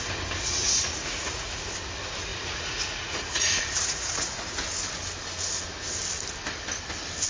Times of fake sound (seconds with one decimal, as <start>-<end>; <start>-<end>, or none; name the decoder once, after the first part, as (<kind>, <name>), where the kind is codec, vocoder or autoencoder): 0.4-1.6 (vocoder, Vocos); 2.3-4.4